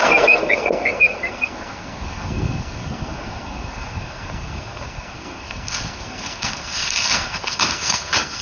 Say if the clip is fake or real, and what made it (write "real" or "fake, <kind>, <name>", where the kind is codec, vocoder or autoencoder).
fake, codec, SNAC